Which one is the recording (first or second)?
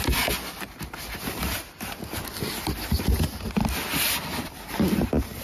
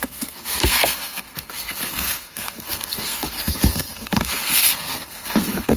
first